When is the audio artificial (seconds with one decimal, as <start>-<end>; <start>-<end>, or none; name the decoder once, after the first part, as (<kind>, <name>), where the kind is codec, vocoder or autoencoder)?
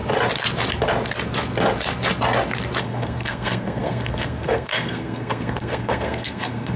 2.8-6.8 (codec, SNAC)